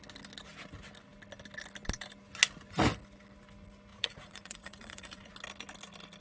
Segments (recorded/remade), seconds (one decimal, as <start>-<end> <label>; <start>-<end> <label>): 0.0-3.9 recorded; 3.9-5.3 remade; 5.3-6.2 recorded